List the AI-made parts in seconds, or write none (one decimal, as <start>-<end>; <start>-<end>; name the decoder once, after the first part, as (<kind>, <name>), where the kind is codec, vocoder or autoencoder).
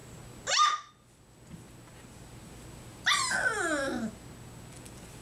none